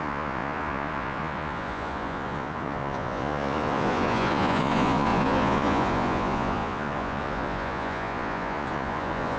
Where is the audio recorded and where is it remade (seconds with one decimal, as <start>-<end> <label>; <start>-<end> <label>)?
0.0-9.4 remade